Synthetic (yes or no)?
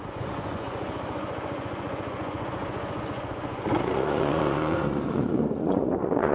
yes